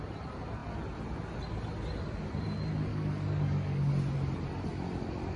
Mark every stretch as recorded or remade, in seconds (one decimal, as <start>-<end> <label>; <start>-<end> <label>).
0.0-2.9 recorded; 2.9-3.9 remade; 3.9-5.4 recorded